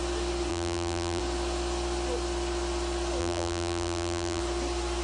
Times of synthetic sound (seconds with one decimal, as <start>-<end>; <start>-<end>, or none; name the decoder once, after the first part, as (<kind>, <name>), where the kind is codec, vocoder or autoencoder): 0.5-1.2 (vocoder, BigVGAN v2); 3.2-4.4